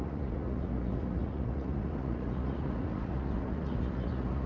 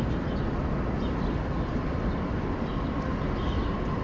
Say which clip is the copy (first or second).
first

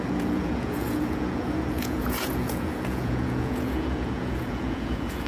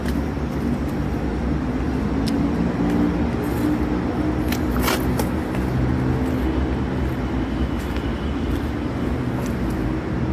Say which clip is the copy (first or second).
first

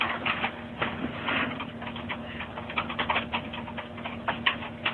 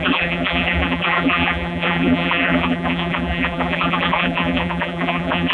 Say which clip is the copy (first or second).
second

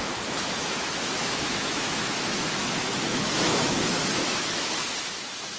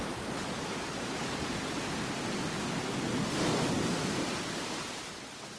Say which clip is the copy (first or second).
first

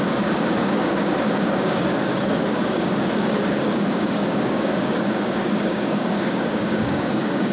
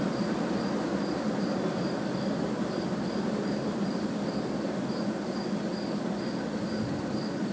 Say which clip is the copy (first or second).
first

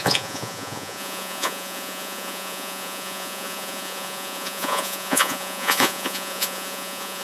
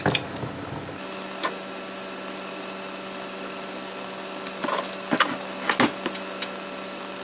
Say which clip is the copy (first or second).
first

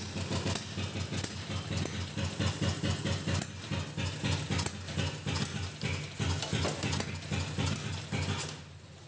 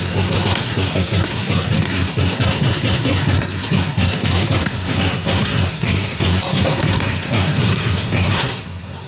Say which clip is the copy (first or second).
second